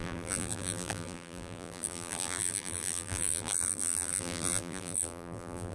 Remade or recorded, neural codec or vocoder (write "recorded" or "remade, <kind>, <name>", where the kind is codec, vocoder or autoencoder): remade, vocoder, BigVGAN v2